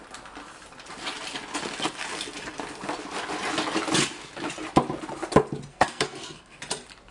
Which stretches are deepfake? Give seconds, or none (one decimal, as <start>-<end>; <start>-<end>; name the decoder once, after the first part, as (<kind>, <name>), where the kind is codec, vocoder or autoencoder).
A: 5.7-6.6 (codec, SNAC)